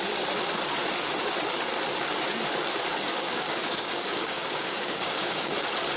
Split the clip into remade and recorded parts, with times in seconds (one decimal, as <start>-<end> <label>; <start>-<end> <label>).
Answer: 0.0-3.1 recorded; 3.1-5.5 remade; 5.5-6.0 recorded